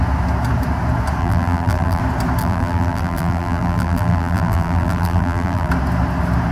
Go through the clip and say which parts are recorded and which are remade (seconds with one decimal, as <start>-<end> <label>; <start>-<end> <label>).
0.0-1.2 recorded; 1.2-2.0 remade; 2.0-2.4 recorded; 2.4-5.7 remade; 5.7-6.5 recorded